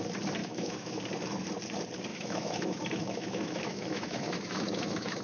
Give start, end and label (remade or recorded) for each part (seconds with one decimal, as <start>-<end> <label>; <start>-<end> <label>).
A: 0.0-0.4 recorded; 0.4-1.0 remade; 1.0-2.1 recorded; 2.1-5.2 remade